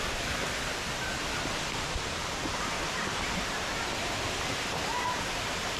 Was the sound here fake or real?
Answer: fake